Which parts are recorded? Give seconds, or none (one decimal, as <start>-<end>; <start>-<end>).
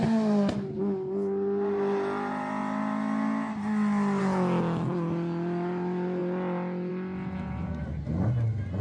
0.0-8.8